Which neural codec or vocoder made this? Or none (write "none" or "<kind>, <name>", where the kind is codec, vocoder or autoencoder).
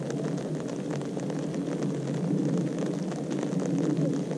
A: none